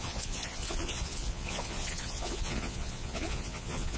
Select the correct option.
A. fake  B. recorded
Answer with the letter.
A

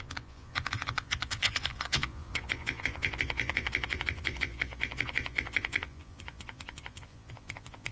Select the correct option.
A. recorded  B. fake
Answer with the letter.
B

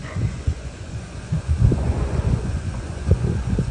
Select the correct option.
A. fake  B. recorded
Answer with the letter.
A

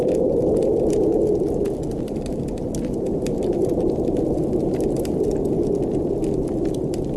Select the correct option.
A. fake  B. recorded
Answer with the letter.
B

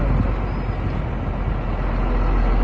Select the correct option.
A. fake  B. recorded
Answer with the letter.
B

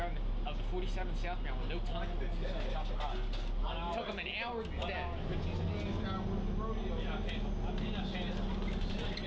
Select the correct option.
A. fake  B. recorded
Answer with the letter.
B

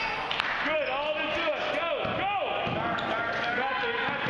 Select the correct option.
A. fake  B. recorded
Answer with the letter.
B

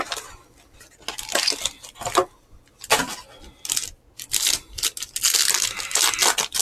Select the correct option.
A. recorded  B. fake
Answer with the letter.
A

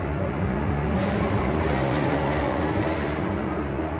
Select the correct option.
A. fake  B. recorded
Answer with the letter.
A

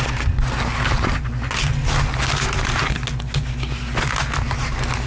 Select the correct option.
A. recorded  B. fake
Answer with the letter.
A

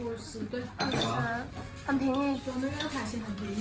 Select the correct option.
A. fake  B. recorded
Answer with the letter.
B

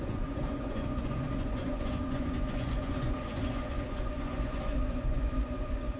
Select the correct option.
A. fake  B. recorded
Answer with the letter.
A